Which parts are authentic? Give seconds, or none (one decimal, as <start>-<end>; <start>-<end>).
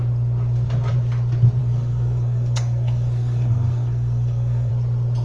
0.0-1.6; 4.7-5.2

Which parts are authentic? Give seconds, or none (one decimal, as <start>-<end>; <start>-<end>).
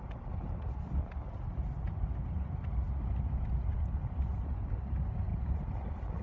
0.0-6.2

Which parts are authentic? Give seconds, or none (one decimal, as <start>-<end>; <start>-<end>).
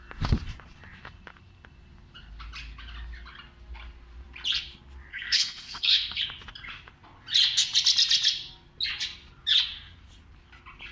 0.0-5.1; 6.2-10.9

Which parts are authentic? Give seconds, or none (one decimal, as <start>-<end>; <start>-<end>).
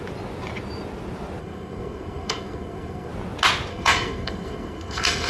0.0-1.4; 3.1-3.7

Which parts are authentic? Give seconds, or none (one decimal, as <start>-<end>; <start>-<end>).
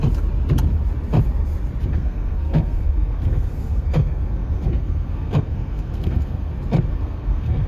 0.0-1.9; 6.5-6.9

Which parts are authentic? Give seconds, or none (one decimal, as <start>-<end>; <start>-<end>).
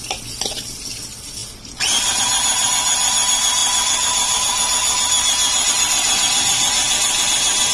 0.0-7.7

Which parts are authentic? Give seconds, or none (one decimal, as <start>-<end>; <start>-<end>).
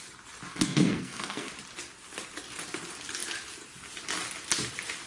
0.0-0.5; 1.5-5.1